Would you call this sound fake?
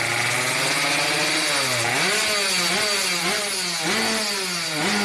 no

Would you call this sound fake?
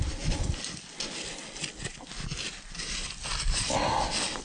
no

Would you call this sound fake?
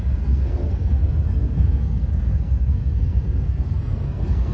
yes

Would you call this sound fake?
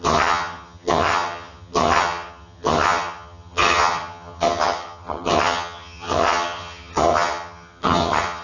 yes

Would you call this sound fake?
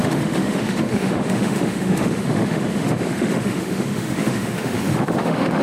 yes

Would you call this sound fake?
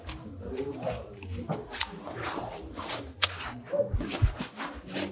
no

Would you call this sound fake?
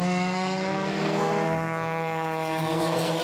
yes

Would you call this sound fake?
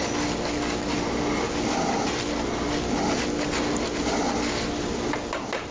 no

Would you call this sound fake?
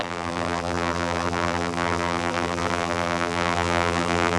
yes